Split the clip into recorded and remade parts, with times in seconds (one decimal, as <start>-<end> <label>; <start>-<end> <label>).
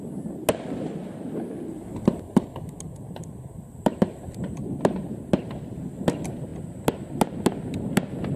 0.0-1.9 recorded; 1.9-4.4 remade; 4.4-8.4 recorded